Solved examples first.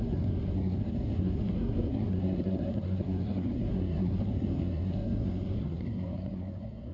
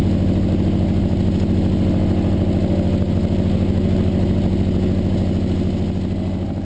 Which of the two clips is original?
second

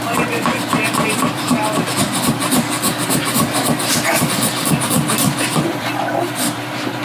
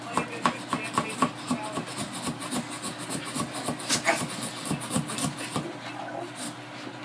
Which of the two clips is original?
second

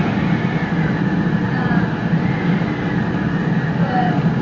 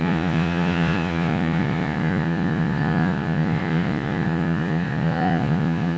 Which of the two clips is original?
first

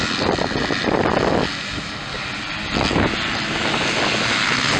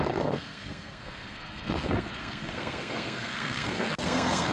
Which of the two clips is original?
first